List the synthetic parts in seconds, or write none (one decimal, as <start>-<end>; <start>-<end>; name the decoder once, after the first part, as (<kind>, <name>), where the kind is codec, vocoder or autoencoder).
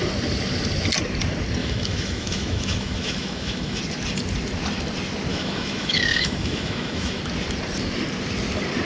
1.6-3.8 (autoencoder, DAC-VAE); 5.3-7.2